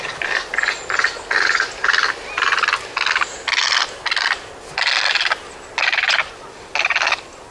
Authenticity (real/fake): real